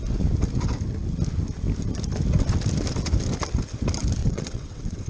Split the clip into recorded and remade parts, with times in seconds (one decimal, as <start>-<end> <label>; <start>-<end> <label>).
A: 0.0-4.2 recorded; 4.2-5.1 remade